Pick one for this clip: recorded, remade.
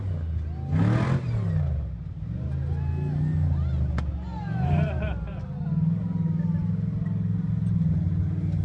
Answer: recorded